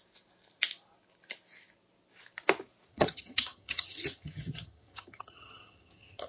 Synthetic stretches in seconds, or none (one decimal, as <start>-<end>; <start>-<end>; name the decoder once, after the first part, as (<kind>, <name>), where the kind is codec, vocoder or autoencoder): 2.9-6.3 (vocoder, HiFi-GAN)